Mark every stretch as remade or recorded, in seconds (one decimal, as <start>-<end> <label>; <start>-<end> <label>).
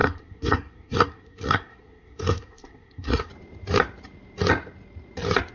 0.0-3.3 remade; 3.3-5.5 recorded